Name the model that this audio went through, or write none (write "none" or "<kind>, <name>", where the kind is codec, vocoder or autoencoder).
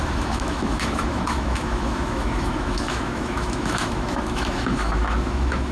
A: autoencoder, DAC-VAE